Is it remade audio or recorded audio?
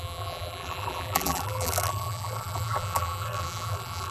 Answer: remade